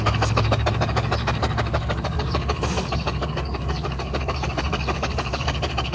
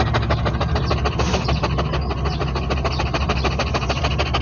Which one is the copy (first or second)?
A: first